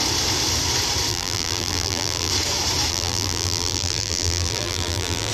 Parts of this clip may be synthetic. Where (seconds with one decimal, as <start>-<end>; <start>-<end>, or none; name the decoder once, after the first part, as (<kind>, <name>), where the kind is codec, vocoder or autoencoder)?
1.1-2.3 (vocoder, BigVGAN v2); 2.9-5.3